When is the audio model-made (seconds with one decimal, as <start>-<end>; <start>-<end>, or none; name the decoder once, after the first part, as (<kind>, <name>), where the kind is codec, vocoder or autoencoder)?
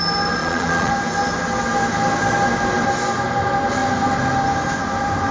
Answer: 0.4-0.9 (vocoder, Vocos)